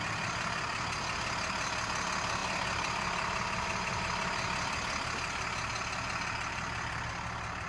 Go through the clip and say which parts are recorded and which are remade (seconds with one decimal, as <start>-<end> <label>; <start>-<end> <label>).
0.0-7.7 recorded